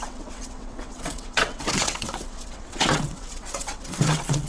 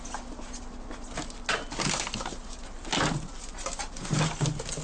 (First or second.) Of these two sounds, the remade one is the first